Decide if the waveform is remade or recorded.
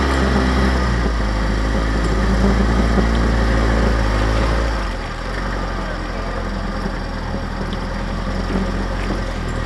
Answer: recorded